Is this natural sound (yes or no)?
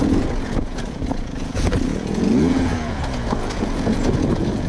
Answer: no